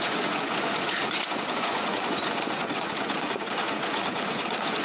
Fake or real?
fake